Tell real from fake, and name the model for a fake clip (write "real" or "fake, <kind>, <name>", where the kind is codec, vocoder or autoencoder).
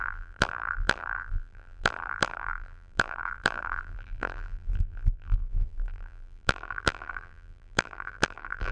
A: fake, vocoder, BigVGAN v2